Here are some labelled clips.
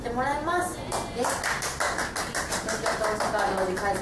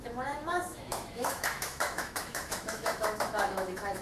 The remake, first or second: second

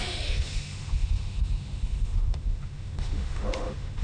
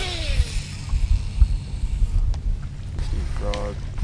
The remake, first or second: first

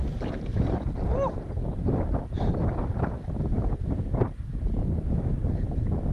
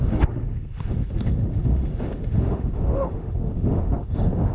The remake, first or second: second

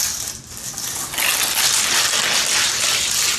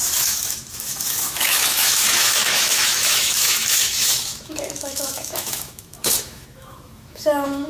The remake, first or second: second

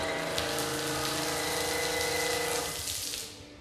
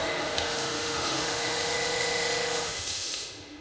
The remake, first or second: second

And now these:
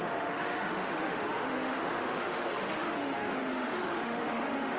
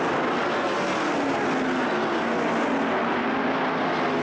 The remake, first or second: first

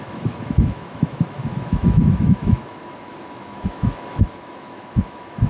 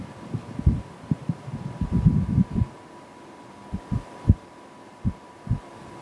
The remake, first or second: first